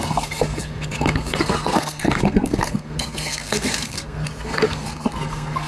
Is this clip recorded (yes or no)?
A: no